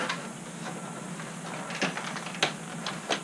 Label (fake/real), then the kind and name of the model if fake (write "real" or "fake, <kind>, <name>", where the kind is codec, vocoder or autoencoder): real